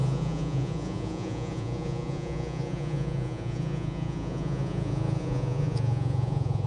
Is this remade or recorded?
remade